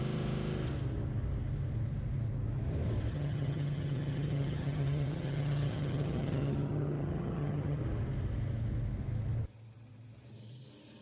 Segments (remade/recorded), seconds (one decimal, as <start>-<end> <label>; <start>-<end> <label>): 0.0-3.1 recorded; 3.1-7.8 remade; 7.8-11.0 recorded